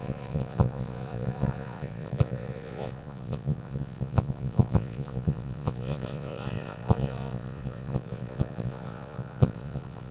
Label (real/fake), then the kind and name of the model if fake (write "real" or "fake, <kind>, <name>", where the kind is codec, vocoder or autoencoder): fake, vocoder, Vocos